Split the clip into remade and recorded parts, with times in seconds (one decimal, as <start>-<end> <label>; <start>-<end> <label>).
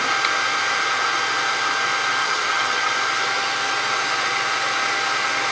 0.0-2.2 recorded; 2.2-2.9 remade; 2.9-5.5 recorded